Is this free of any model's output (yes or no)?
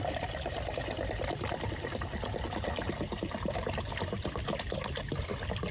yes